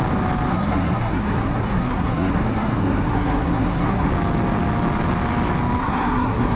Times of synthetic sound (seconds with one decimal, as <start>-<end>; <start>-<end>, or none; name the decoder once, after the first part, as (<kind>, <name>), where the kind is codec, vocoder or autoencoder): 0.5-4.1 (codec, SNAC); 5.8-6.6

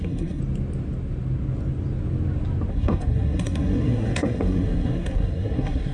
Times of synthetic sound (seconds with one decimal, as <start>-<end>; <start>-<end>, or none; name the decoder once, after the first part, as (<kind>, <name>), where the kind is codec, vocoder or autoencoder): 0.0-0.4 (codec, SNAC); 2.7-5.9

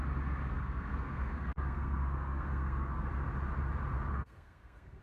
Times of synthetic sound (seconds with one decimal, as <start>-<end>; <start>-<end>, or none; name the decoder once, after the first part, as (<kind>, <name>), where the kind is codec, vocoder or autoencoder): 0.5-3.1 (codec, SNAC); 4.1-5.0

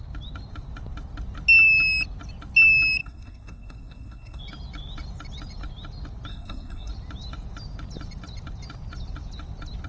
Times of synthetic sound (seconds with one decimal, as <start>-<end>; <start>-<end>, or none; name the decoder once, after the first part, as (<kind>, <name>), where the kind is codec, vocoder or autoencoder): 3.0-4.4 (codec, SNAC); 6.3-6.9

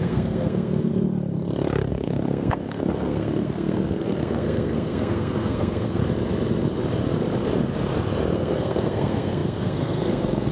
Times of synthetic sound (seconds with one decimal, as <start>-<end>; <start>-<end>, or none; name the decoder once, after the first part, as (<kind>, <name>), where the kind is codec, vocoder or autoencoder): 0.0-0.9 (codec, SNAC); 1.9-6.0; 8.3-10.5

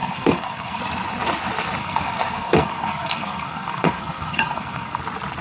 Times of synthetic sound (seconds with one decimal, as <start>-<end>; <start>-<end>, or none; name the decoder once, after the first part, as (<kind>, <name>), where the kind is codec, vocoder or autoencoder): 0.0-0.8 (codec, SNAC); 1.8-5.0

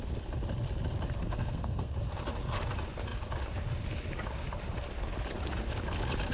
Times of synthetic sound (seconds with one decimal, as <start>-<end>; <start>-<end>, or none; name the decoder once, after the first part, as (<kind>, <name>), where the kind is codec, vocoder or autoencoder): 1.2-1.9 (codec, SNAC)